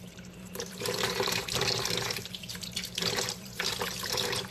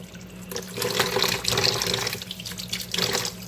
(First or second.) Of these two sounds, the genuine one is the second